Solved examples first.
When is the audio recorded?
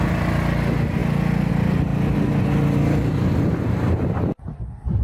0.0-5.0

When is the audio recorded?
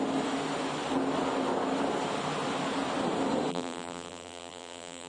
0.0-3.5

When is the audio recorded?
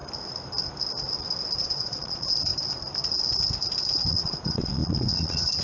0.0-1.6; 2.5-4.1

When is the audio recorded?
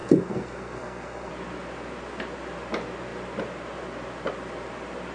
1.3-5.1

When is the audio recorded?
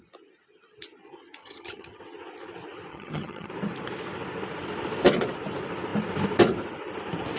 0.0-1.4; 2.0-2.9; 3.5-7.4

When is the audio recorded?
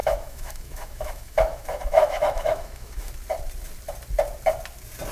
3.1-5.1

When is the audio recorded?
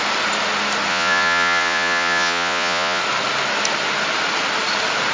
0.0-0.9; 3.0-5.1